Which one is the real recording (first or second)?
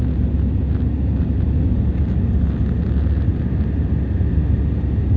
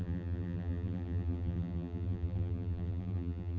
first